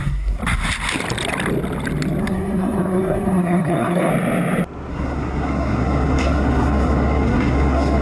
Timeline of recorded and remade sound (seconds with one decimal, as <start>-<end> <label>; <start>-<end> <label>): 0.0-0.4 remade; 0.4-2.2 recorded; 2.2-4.1 remade; 4.1-4.9 recorded; 4.9-8.0 remade